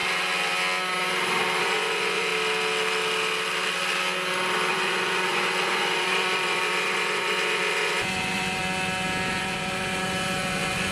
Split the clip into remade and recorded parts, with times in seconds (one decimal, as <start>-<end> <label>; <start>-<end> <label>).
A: 0.0-1.6 recorded; 1.6-2.3 remade; 2.3-4.7 recorded; 4.7-8.6 remade; 8.6-9.3 recorded; 9.3-10.9 remade